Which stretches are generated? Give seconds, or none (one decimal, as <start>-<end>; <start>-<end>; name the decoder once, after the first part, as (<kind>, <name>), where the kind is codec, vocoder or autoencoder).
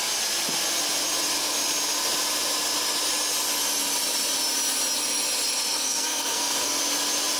5.6-6.8 (codec, SNAC)